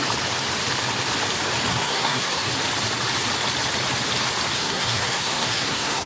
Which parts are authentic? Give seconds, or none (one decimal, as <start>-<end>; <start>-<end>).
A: 0.0-1.7; 2.5-4.6